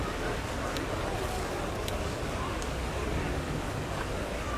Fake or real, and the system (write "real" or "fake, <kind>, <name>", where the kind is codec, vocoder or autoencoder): fake, codec, DAC